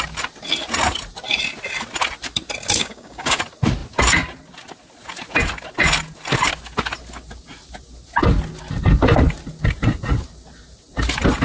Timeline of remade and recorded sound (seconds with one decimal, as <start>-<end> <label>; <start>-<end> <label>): 0.0-2.8 recorded; 2.8-3.4 remade; 3.4-11.4 recorded